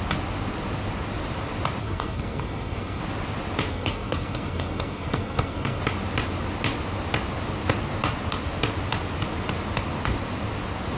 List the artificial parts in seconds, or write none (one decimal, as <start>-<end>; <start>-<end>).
1.8-3.0; 3.7-5.8